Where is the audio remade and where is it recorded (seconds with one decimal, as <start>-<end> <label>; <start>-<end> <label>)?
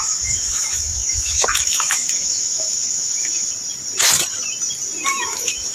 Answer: 0.0-3.4 remade; 3.4-5.1 recorded; 5.1-5.7 remade